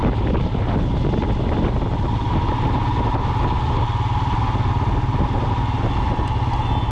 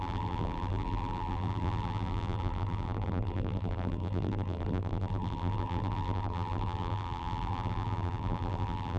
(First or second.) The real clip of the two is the first